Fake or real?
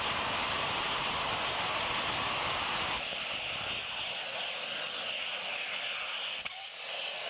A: real